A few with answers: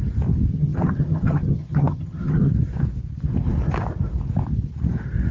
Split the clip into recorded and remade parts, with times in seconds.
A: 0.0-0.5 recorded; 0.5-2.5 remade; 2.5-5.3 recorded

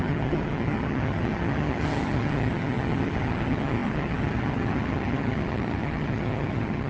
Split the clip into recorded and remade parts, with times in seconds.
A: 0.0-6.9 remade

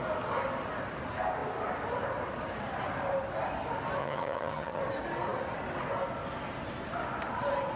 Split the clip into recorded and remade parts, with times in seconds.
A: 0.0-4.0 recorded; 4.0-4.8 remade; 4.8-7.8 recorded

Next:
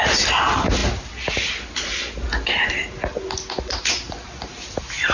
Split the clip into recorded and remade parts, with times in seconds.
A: 0.0-5.1 recorded

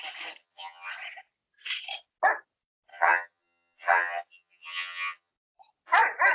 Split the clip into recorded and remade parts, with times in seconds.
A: 0.0-0.4 recorded; 0.4-0.9 remade; 0.9-2.9 recorded; 2.9-5.3 remade; 5.3-6.3 recorded